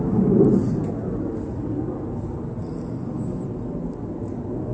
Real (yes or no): yes